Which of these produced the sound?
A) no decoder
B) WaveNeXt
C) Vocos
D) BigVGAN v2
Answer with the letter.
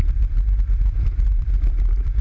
D